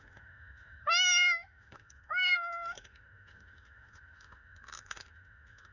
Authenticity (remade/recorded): remade